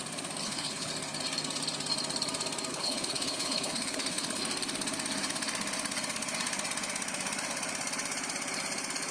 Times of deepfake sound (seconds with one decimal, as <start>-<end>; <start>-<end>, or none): 0.4-0.9; 2.7-4.4